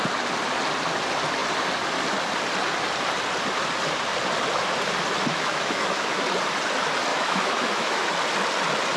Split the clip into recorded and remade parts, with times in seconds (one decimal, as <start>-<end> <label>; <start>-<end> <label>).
0.0-5.3 recorded; 5.3-6.2 remade; 6.2-7.1 recorded; 7.1-8.1 remade; 8.1-9.0 recorded